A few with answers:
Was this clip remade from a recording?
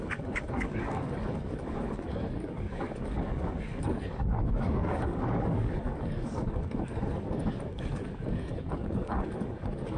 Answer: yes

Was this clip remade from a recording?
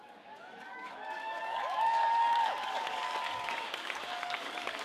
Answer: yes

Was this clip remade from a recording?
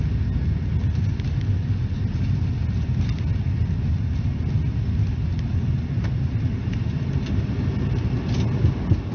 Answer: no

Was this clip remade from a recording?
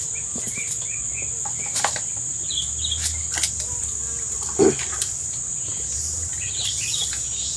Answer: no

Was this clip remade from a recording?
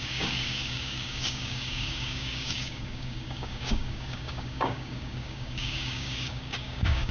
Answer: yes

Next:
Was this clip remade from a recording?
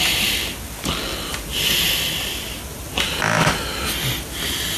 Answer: no